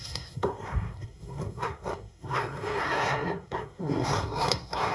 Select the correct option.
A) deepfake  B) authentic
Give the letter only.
A